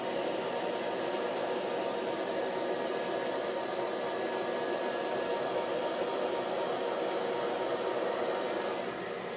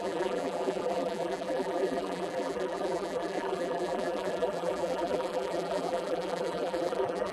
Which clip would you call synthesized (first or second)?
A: second